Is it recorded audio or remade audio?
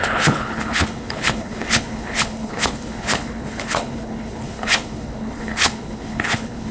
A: remade